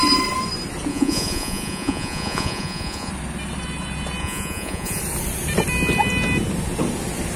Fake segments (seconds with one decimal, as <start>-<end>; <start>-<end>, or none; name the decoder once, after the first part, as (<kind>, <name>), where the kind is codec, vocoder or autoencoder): 0.9-3.1 (vocoder, Vocos); 4.2-5.0